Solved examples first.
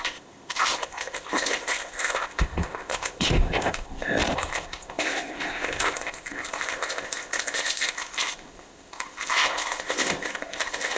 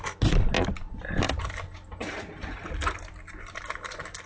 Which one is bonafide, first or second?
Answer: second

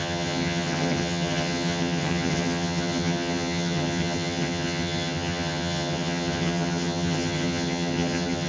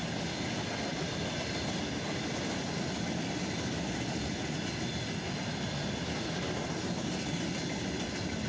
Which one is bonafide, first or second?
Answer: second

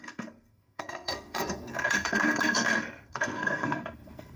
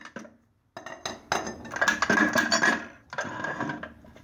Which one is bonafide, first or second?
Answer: second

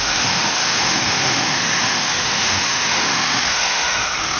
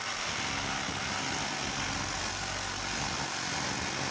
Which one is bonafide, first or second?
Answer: second